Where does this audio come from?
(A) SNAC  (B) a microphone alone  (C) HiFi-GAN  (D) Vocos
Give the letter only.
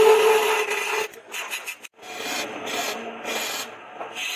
B